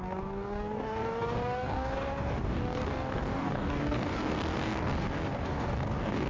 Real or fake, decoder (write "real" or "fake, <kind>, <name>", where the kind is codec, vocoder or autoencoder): fake, codec, DAC